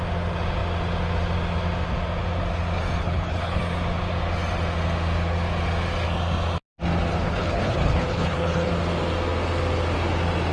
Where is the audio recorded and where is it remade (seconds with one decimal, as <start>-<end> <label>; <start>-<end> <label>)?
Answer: 0.0-3.0 recorded; 3.0-3.6 remade; 3.6-7.1 recorded; 7.1-8.7 remade; 8.7-10.5 recorded